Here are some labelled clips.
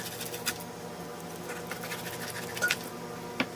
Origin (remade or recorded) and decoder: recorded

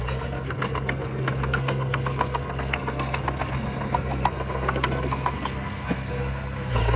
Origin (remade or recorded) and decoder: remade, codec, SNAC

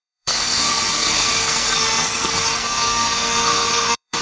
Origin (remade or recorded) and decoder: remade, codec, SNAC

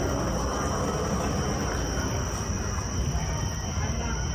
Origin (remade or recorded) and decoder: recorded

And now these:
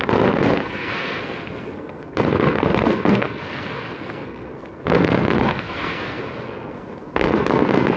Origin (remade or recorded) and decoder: remade, codec, SNAC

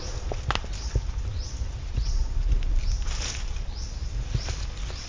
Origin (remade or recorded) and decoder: recorded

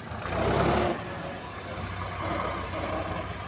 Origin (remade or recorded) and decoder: recorded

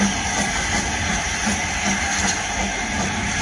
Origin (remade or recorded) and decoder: recorded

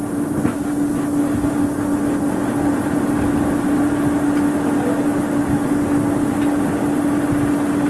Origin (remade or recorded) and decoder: recorded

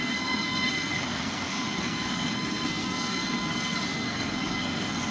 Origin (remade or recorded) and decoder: remade, codec, SNAC